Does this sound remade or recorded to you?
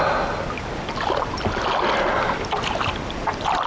recorded